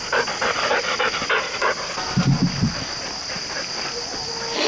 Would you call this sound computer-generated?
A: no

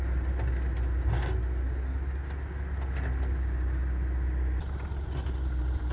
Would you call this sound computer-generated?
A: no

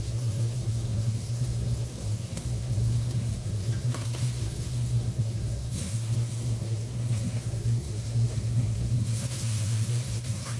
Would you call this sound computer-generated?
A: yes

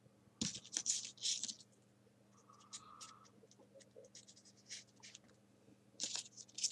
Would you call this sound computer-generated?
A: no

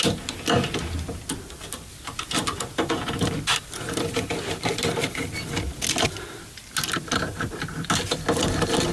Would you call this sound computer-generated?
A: no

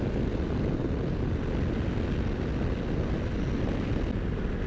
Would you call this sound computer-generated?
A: no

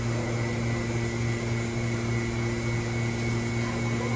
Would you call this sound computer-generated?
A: no